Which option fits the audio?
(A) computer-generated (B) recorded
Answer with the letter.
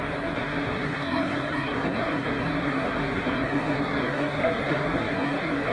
A